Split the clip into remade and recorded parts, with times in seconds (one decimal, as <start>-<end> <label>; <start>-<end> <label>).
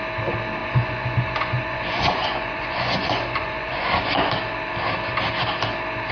0.0-0.6 recorded; 0.6-4.3 remade; 4.3-6.1 recorded